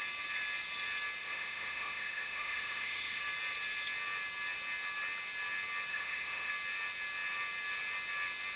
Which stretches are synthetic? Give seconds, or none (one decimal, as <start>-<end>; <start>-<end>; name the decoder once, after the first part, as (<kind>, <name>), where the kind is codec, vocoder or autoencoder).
1.2-3.2 (autoencoder, DAC-VAE); 5.9-6.5